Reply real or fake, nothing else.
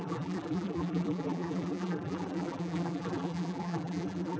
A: fake